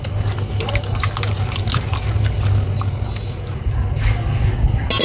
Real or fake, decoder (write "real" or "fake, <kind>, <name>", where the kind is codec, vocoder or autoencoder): real